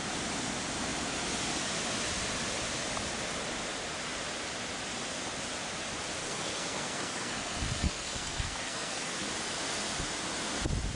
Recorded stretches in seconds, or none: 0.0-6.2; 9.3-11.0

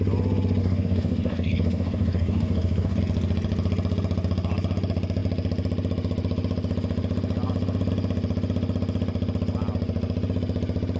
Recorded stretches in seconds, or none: 0.0-0.6; 3.0-11.0

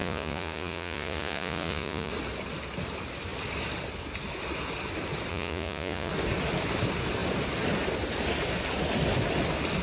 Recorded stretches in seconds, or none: 2.1-5.3; 6.1-9.8

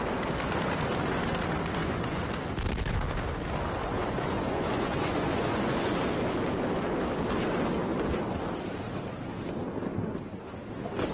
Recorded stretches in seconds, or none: 0.0-1.8; 2.3-3.8; 6.0-11.1

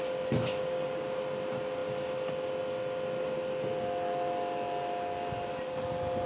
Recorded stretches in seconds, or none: 0.0-0.6; 1.2-6.3